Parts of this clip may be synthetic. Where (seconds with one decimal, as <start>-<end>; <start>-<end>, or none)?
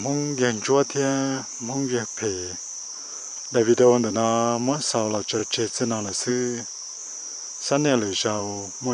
0.0-5.4; 6.3-8.9